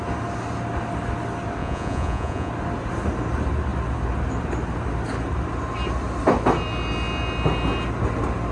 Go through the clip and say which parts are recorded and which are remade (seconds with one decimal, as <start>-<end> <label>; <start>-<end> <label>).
0.0-1.6 recorded; 1.6-2.5 remade; 2.5-8.5 recorded